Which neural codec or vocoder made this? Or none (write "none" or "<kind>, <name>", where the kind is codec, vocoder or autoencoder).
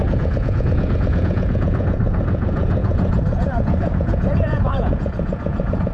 vocoder, Vocos